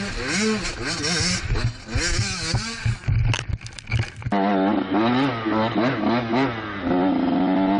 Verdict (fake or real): real